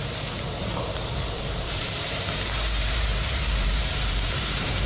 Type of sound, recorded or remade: remade